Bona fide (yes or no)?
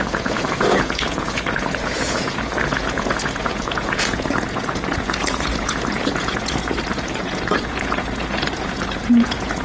no